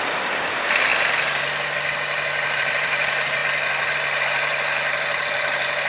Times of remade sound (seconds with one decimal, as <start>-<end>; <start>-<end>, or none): 0.0-0.9; 2.5-3.4; 4.2-5.9